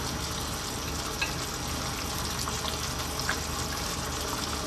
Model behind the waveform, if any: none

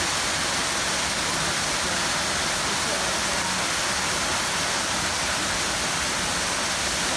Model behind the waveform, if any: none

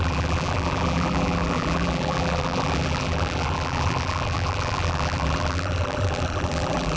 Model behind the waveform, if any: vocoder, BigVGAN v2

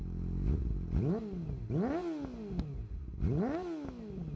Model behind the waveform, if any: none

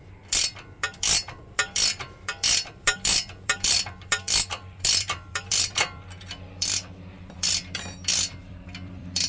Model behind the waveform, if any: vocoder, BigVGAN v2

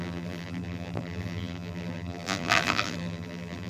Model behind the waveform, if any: vocoder, BigVGAN v2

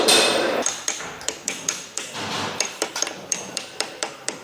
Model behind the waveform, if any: vocoder, BigVGAN v2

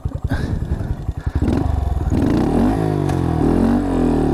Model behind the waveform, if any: none